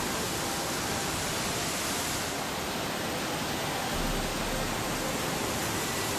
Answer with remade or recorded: recorded